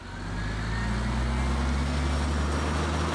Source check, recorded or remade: recorded